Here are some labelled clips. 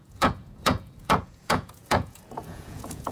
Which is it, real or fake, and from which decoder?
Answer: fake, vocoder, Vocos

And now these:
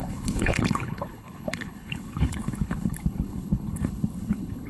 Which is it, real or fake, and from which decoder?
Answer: fake, codec, HILCodec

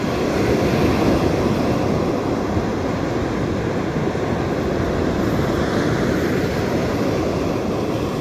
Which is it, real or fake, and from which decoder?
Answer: real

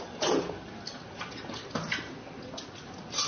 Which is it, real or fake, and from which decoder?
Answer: real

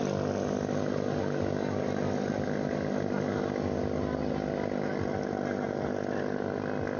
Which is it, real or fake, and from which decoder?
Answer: real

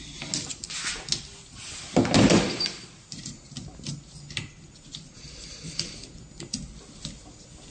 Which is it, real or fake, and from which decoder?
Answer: real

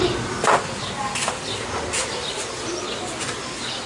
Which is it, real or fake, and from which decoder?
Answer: real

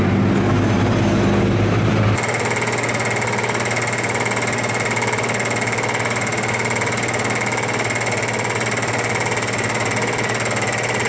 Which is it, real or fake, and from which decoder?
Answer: real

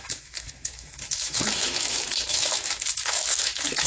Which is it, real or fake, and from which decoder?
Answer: fake, autoencoder, DAC-VAE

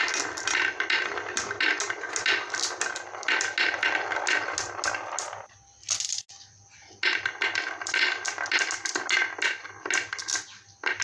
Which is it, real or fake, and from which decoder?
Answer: real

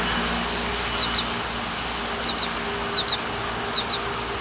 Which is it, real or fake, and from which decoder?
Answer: real